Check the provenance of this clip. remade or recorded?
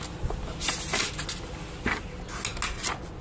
recorded